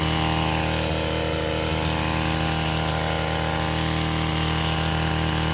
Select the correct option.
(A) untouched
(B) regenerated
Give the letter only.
A